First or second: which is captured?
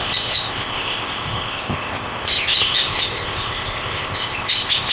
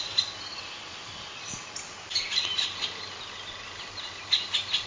second